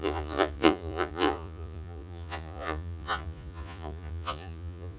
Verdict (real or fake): fake